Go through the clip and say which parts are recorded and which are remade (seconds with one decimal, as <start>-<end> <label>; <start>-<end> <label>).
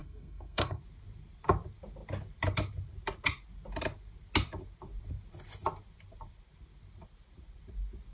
0.0-0.8 remade; 0.8-8.1 recorded